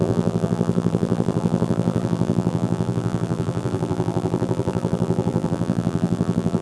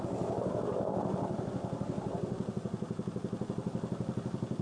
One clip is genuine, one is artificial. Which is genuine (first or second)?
second